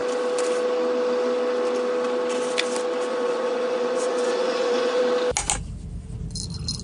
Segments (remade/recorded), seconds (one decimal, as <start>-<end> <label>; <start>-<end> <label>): 0.0-3.1 recorded; 3.1-5.0 remade; 5.0-6.8 recorded